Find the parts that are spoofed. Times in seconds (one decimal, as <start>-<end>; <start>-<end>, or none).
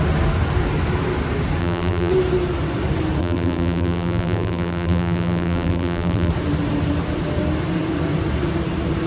1.6-2.1; 3.2-6.3